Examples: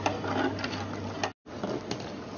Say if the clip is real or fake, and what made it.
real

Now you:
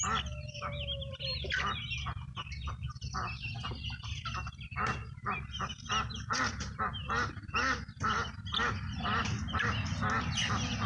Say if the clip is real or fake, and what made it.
real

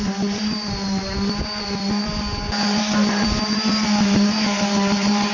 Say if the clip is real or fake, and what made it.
real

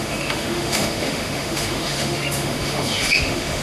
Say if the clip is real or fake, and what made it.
fake, autoencoder, DAC-VAE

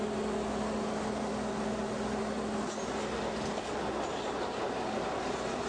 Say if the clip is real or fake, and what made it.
real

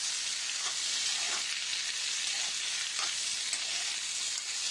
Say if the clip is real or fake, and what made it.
real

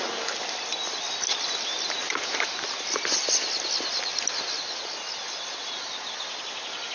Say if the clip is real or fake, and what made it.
real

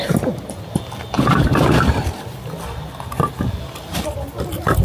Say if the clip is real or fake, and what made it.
real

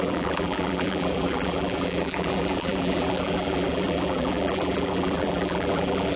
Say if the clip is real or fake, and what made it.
fake, vocoder, BigVGAN v2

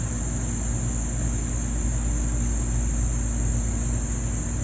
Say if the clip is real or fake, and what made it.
real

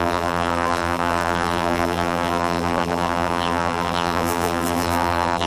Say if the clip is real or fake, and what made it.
fake, vocoder, BigVGAN v2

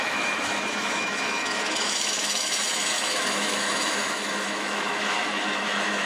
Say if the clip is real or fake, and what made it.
fake, autoencoder, DAC-VAE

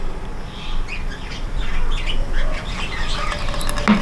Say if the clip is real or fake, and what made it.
real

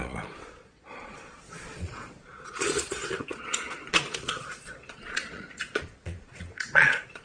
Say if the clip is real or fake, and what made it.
fake, vocoder, Vocos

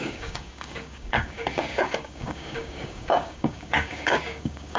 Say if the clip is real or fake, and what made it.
fake, codec, DAC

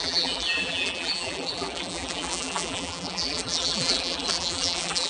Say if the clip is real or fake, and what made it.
fake, vocoder, BigVGAN v2